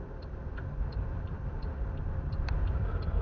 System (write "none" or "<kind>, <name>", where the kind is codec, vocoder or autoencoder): vocoder, BigVGAN v2